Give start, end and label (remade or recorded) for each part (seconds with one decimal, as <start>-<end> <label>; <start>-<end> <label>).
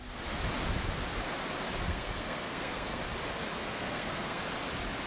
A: 0.0-1.9 recorded; 1.9-3.0 remade; 3.0-3.6 recorded; 3.6-4.4 remade; 4.4-5.1 recorded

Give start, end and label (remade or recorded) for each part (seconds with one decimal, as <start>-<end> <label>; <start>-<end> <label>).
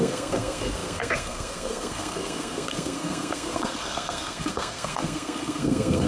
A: 0.0-6.1 remade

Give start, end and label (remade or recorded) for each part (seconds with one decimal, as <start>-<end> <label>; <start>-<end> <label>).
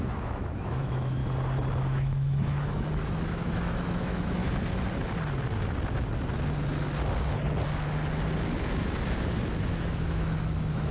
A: 0.0-1.2 remade; 1.2-1.8 recorded; 1.8-4.4 remade; 4.4-9.6 recorded; 9.6-10.9 remade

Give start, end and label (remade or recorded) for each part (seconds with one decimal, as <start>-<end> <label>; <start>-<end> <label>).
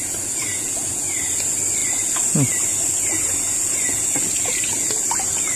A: 0.0-5.6 recorded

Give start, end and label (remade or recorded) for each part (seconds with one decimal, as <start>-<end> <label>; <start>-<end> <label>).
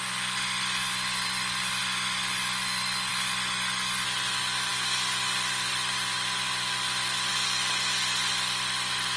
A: 0.0-9.2 recorded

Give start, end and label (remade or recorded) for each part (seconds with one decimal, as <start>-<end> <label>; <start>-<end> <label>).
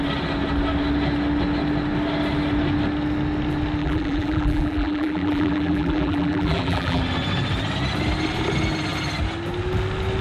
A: 0.0-3.8 recorded; 3.8-7.0 remade; 7.0-10.2 recorded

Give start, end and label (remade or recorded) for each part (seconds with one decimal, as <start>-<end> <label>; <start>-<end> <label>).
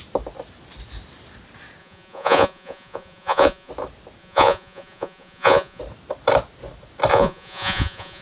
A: 0.0-1.8 recorded; 1.8-3.7 remade; 3.7-4.2 recorded; 4.2-5.8 remade; 5.8-7.1 recorded; 7.1-8.2 remade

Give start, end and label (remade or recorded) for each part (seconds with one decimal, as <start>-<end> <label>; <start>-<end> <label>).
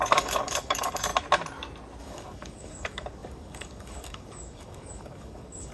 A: 0.0-1.1 remade; 1.1-2.0 recorded; 2.0-5.7 remade